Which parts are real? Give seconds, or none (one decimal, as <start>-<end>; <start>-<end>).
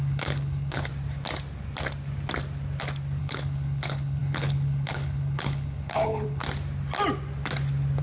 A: 0.9-3.2; 6.4-8.0